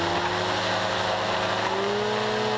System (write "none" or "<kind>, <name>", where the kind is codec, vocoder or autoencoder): none